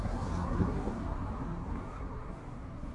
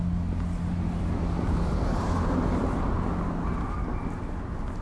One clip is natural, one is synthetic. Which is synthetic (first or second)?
first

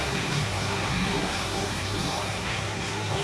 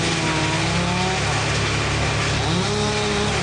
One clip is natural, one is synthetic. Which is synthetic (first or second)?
first